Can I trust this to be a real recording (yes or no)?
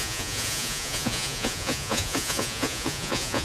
no